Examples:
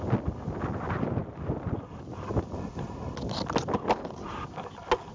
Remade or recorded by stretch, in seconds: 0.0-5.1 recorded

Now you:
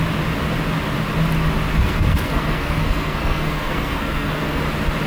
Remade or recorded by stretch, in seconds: 0.0-1.7 recorded; 1.7-4.6 remade; 4.6-5.1 recorded